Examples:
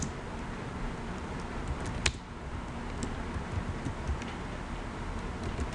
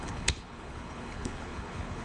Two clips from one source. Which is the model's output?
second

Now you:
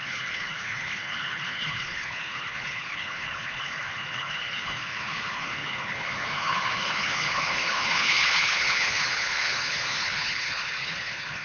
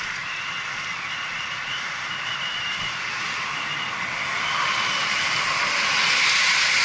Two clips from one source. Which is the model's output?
first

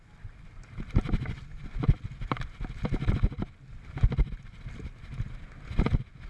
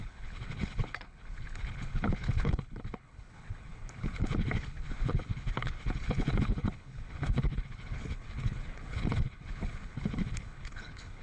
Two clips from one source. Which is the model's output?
second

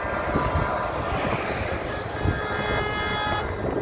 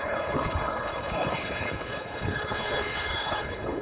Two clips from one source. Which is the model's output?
second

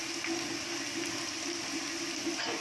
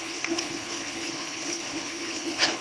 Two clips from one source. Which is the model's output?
second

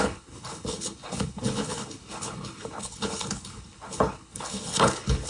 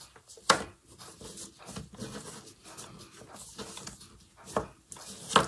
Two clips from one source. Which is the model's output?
first